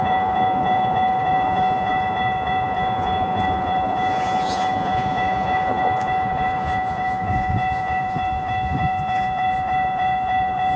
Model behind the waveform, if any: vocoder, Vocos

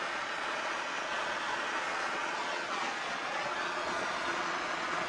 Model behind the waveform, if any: vocoder, Vocos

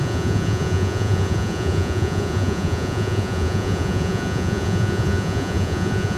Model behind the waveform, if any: vocoder, Vocos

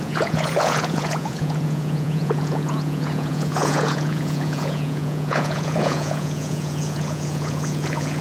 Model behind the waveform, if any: vocoder, Vocos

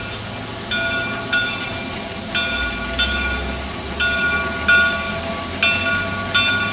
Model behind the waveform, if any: none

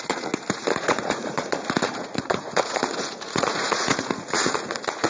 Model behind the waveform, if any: vocoder, Vocos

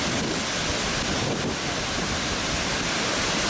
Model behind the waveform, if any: none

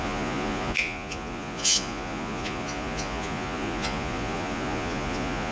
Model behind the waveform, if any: vocoder, Vocos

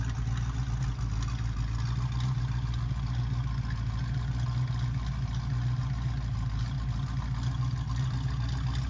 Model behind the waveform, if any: none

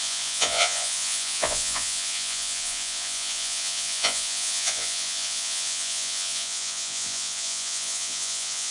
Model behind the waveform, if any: vocoder, Vocos